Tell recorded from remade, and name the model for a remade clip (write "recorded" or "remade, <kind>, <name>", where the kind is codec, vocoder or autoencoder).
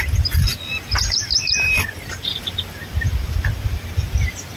remade, vocoder, BigVGAN v2